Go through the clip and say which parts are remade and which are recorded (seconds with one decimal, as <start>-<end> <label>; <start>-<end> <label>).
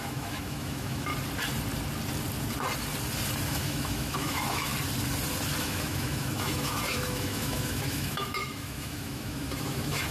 0.0-1.1 remade; 1.1-3.5 recorded; 3.5-4.7 remade; 4.7-5.6 recorded; 5.6-10.1 remade